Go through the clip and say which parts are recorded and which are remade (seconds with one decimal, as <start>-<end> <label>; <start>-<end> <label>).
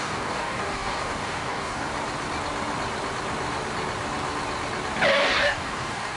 0.0-1.9 remade; 1.9-5.1 recorded; 5.1-6.2 remade